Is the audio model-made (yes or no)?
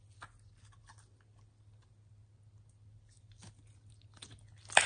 no